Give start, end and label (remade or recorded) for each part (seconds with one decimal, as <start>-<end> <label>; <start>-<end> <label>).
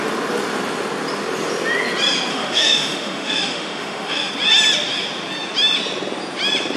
0.0-2.3 recorded; 2.3-4.3 remade; 4.3-6.8 recorded